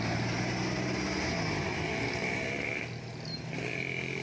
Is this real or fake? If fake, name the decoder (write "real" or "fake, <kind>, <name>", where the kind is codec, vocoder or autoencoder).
real